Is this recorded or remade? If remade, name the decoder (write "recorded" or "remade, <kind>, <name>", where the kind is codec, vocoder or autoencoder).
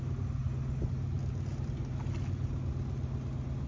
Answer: recorded